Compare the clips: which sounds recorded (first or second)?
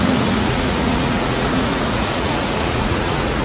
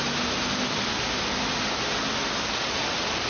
second